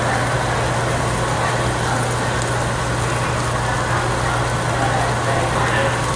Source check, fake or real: real